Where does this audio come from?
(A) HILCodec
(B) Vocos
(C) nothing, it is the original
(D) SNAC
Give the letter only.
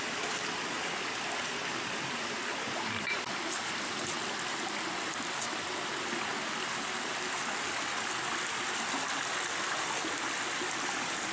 C